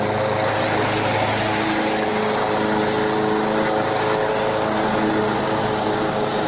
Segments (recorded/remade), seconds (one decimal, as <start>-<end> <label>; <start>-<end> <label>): 0.0-5.6 recorded; 5.6-6.5 remade